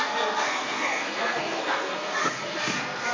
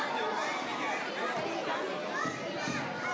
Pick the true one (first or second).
second